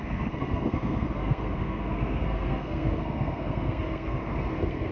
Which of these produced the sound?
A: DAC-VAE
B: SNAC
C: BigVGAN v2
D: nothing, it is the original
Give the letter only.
B